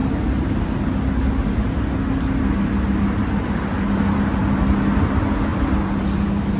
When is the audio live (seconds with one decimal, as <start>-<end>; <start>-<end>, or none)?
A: 0.0-6.6